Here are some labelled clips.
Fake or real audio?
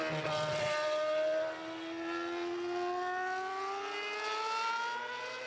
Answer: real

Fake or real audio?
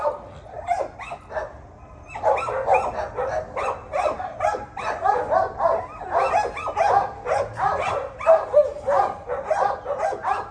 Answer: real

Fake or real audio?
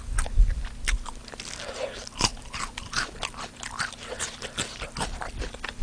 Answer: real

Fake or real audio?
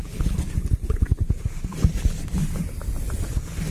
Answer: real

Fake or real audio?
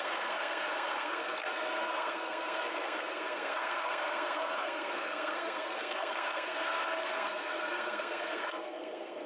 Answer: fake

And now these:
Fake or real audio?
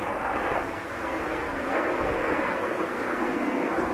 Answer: fake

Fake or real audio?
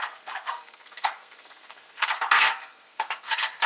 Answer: fake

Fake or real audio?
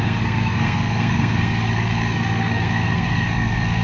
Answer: fake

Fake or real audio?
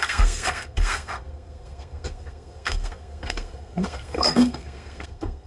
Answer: fake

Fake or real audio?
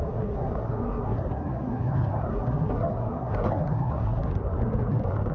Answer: fake